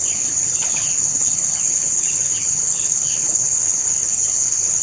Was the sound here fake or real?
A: fake